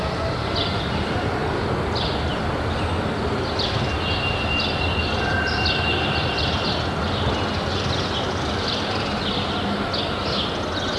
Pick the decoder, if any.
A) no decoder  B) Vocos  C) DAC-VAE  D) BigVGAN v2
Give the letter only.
A